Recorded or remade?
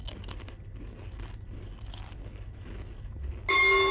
recorded